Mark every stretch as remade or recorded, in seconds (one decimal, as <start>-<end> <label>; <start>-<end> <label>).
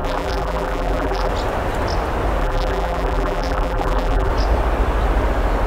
0.0-1.3 remade; 1.3-2.4 recorded; 2.4-4.3 remade; 4.3-5.7 recorded